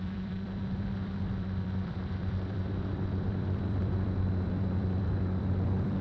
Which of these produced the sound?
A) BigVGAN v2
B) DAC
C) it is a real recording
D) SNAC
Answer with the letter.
A